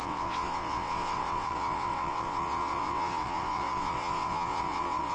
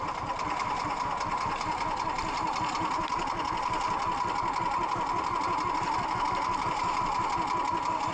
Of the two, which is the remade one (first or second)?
first